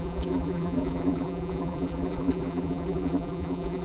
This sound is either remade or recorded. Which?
remade